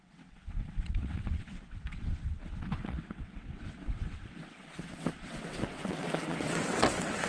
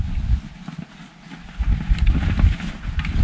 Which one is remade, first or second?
first